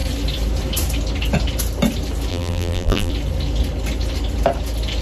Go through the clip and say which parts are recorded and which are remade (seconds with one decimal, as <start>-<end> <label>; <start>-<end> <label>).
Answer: 0.0-2.3 recorded; 2.3-3.1 remade; 3.1-5.0 recorded